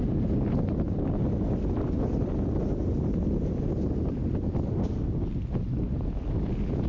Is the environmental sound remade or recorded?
recorded